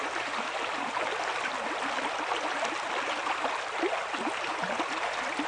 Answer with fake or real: real